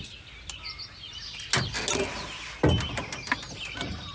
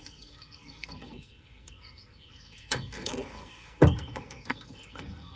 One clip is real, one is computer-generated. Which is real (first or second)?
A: first